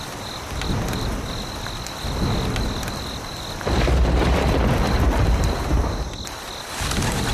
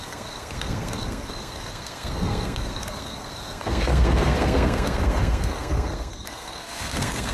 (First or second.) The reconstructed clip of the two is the second